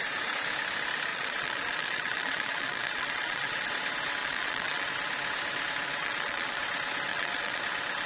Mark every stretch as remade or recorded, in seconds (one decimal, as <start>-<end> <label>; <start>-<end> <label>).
0.0-1.1 recorded; 1.1-3.7 remade; 3.7-4.2 recorded; 4.2-4.9 remade; 4.9-6.0 recorded; 6.0-6.6 remade; 6.6-7.1 recorded; 7.1-7.6 remade; 7.6-8.1 recorded